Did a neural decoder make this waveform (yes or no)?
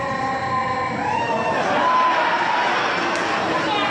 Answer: no